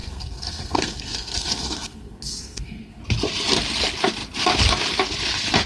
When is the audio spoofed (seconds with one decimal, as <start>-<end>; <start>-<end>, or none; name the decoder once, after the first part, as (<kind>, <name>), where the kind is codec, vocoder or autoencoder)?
0.0-3.0 (codec, SNAC)